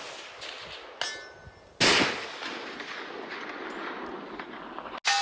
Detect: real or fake real